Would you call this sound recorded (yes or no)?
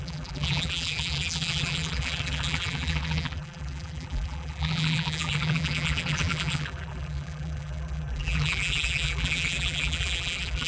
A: no